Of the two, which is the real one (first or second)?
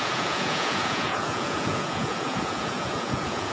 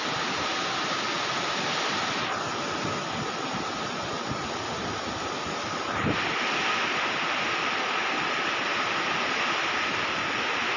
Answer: second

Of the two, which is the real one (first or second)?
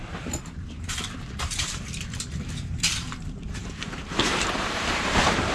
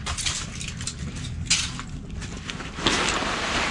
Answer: second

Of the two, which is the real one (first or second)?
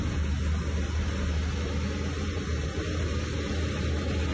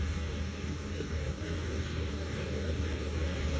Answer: first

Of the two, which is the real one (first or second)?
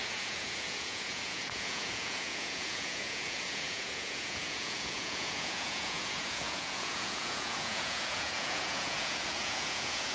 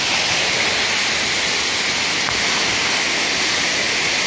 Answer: second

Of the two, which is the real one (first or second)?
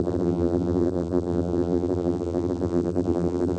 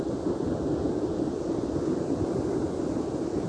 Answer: second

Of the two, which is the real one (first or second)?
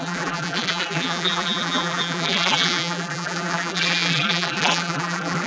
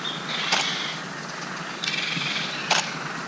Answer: second